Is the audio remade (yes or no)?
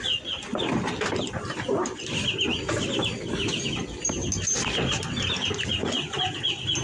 no